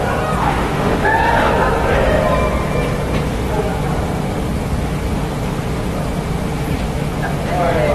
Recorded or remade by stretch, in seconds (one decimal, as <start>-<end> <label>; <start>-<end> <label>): 0.0-0.4 recorded; 0.4-1.5 remade; 1.5-7.9 recorded